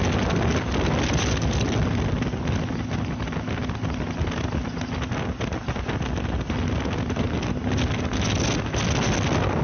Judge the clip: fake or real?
real